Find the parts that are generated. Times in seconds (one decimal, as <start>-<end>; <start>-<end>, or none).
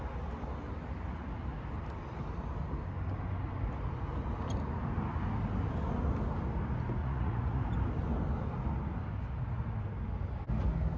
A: 7.0-7.6